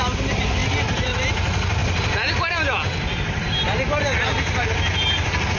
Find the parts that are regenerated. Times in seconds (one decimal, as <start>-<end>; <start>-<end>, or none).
none